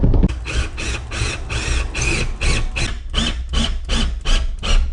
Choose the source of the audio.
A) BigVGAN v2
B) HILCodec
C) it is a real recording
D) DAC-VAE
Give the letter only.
C